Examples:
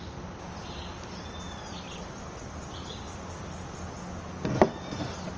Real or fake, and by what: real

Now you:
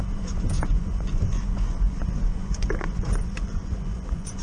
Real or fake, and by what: fake, vocoder, Vocos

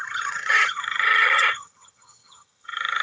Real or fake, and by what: fake, vocoder, HiFi-GAN